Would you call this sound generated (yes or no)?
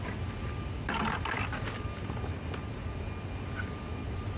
no